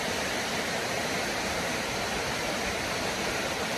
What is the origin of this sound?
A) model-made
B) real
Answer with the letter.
A